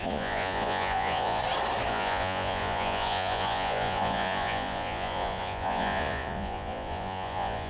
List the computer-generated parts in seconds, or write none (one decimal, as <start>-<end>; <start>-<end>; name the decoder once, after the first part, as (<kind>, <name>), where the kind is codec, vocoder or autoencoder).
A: 0.0-1.4 (vocoder, Vocos); 1.9-7.7